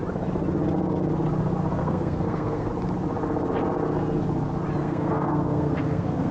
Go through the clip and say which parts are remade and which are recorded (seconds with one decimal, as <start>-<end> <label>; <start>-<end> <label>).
0.0-1.8 recorded; 1.8-2.7 remade; 2.7-4.8 recorded; 4.8-6.3 remade